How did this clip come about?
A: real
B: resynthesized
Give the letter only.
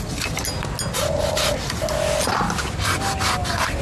A